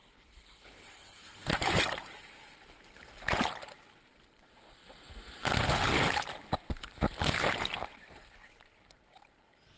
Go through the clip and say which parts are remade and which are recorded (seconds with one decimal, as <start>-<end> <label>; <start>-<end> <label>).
0.0-1.5 remade; 1.5-9.8 recorded